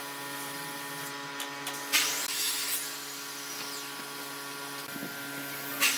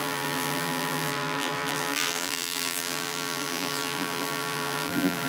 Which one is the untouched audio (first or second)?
first